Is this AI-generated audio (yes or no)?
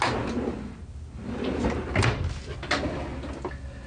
no